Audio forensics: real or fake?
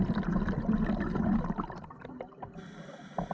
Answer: real